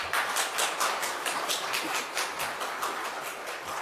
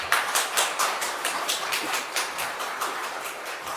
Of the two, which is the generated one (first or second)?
second